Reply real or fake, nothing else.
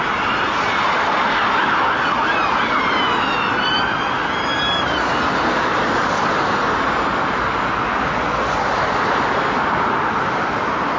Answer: real